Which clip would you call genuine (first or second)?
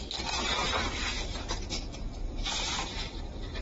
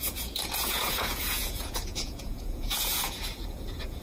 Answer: first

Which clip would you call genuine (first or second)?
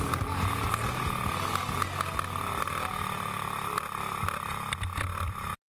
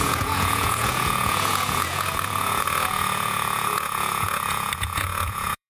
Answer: first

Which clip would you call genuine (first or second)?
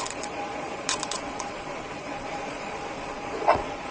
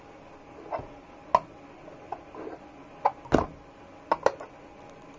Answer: second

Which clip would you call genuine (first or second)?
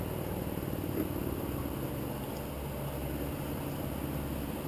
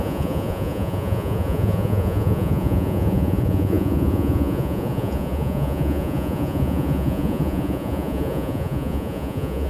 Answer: first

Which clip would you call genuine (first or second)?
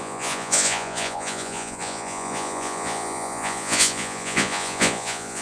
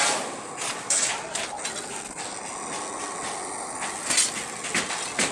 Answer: second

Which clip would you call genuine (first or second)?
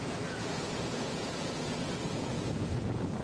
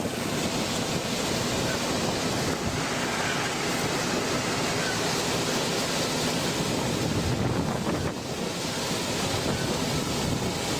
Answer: second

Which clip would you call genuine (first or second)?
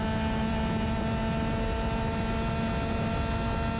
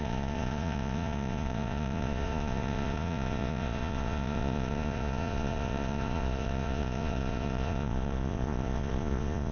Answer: first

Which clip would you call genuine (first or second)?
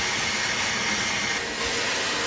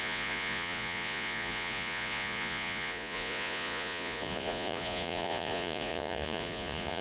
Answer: first